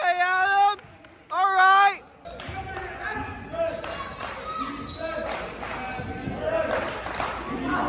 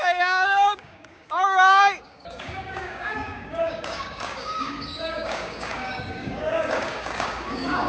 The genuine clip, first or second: first